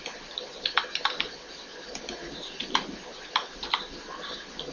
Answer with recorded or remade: recorded